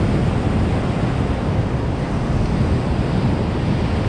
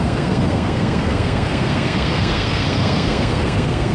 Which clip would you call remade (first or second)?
second